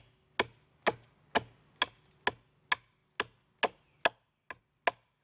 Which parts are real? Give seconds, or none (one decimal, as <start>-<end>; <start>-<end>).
0.0-5.2